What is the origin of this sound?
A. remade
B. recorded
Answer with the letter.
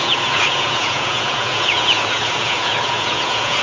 A